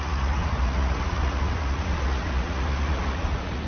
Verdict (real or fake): fake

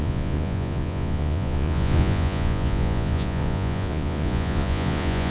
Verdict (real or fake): fake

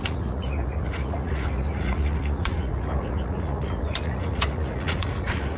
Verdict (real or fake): fake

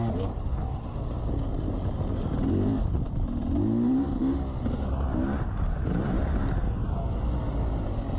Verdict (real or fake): real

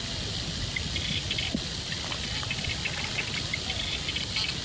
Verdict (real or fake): real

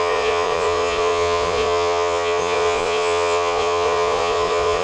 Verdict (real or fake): fake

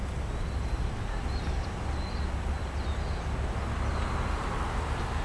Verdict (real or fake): real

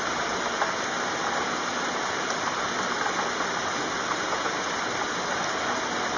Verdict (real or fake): real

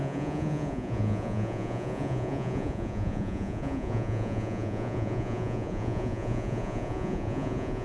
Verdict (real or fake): fake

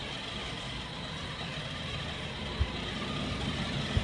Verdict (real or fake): real